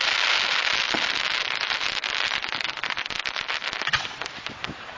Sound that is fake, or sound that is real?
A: real